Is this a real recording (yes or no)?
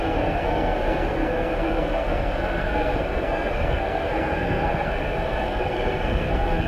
no